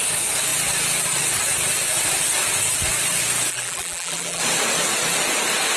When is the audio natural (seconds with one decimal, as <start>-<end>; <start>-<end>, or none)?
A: 0.0-3.5; 4.4-5.8